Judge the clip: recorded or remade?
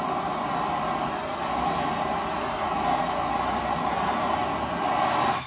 recorded